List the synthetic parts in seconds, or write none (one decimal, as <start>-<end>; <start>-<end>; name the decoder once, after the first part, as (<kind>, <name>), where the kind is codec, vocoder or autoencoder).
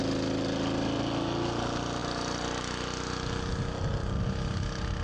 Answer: none